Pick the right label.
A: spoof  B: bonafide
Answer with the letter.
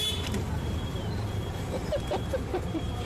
A